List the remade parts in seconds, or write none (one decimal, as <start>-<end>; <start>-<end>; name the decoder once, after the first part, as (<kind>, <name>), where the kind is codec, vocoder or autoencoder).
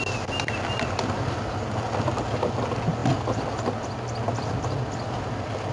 none